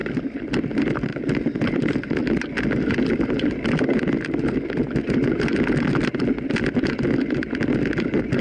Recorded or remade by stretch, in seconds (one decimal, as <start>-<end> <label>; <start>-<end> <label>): 0.0-8.4 recorded